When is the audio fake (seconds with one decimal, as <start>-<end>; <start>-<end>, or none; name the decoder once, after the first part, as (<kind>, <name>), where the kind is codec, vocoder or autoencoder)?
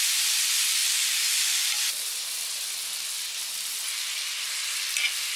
0.8-2.8 (vocoder, BigVGAN v2)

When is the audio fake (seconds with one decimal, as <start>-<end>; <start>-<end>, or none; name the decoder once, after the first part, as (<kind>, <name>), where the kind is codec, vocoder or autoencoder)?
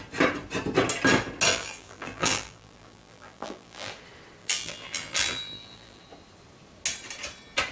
1.5-3.9 (vocoder, BigVGAN v2); 4.4-6.0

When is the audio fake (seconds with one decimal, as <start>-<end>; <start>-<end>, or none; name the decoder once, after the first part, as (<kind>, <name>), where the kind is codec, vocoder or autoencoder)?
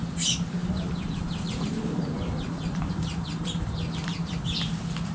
0.6-3.7 (vocoder, BigVGAN v2)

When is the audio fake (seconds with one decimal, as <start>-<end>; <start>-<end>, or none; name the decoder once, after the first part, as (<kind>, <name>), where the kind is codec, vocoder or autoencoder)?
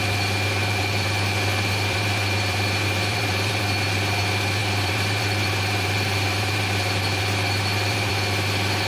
0.6-3.6 (vocoder, BigVGAN v2); 4.6-8.1